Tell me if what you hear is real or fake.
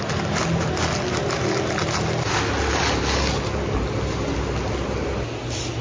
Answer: real